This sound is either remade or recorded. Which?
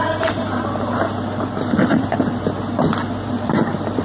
remade